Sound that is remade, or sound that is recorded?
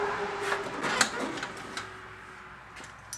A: recorded